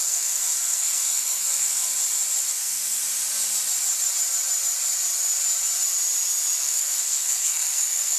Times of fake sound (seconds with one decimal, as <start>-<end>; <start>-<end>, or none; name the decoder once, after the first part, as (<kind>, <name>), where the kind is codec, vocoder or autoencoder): 0.0-1.9 (codec, SNAC); 2.6-3.0; 6.6-8.2